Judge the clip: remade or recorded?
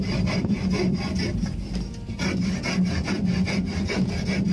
recorded